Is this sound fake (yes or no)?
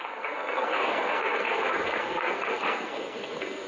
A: yes